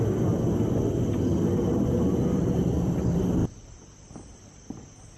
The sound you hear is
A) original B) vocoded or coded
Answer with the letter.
A